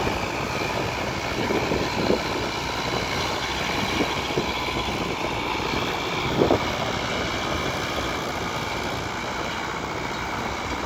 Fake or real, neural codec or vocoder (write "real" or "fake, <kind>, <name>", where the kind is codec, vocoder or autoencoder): real